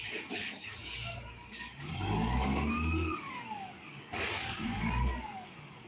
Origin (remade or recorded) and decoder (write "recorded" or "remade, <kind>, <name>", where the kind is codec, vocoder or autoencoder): remade, codec, DAC